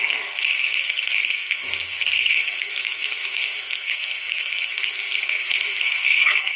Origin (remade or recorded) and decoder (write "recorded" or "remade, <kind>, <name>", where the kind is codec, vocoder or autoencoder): remade, codec, SNAC